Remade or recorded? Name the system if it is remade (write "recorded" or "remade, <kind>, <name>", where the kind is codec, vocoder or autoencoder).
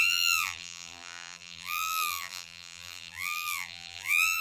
remade, vocoder, BigVGAN v2